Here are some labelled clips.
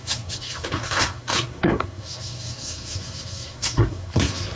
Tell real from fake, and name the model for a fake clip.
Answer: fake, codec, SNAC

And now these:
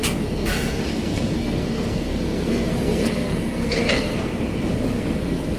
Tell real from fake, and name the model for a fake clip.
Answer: fake, codec, SNAC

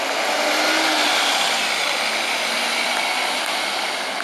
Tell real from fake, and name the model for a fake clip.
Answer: real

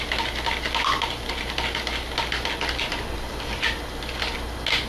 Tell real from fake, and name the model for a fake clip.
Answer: real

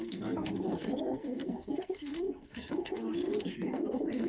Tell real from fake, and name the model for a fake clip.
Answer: fake, codec, SNAC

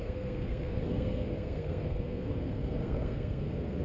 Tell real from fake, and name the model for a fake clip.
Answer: fake, codec, SNAC